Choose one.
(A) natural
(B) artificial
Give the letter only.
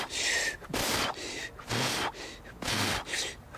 A